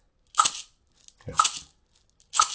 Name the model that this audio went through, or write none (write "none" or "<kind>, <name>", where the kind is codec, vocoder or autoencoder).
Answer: none